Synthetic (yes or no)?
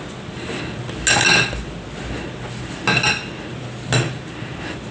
no